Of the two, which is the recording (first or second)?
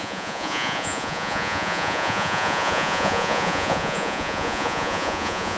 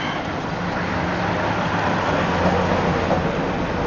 second